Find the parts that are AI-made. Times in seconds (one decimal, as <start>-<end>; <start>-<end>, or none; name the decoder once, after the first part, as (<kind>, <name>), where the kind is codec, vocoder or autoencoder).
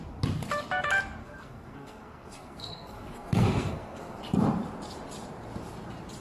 1.2-4.2 (codec, SNAC)